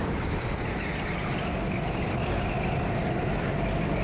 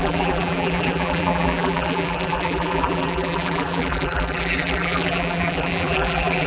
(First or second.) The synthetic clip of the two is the second